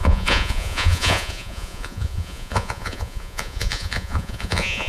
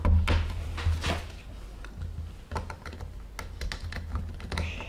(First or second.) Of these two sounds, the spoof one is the first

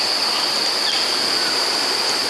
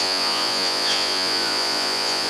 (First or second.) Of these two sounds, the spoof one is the second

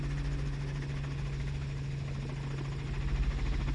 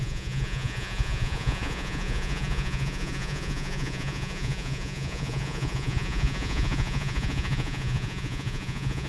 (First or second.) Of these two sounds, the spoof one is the second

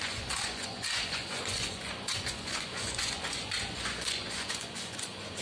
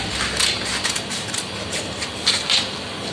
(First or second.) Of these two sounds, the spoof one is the first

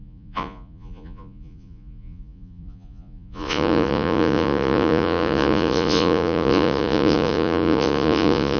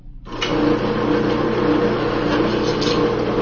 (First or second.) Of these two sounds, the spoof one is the first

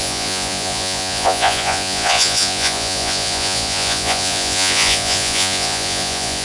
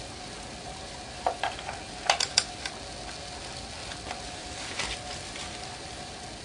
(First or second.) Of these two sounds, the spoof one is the first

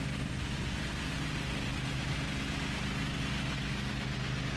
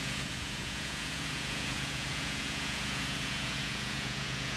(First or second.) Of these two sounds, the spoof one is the second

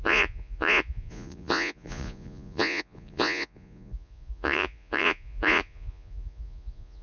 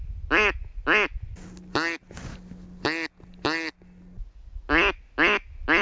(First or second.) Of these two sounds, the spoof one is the first